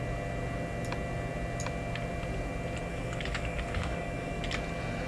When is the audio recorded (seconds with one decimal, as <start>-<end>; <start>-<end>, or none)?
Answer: 0.0-2.9; 4.4-5.1